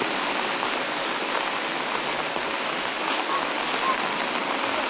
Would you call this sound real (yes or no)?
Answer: yes